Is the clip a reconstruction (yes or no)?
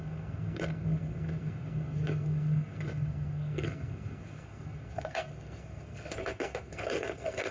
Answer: yes